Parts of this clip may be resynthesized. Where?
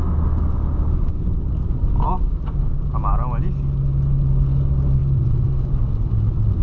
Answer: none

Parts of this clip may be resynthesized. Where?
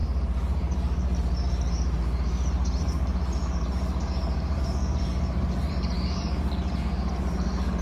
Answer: 0.0-7.8 (vocoder, BigVGAN v2)